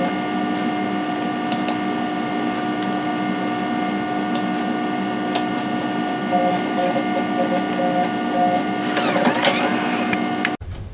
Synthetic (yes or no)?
no